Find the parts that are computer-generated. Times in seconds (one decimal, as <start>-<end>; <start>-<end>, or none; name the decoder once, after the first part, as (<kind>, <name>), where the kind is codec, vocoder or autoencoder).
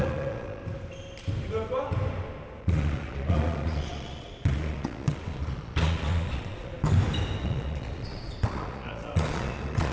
0.0-0.6 (vocoder, Vocos); 2.6-6.7; 7.4-9.9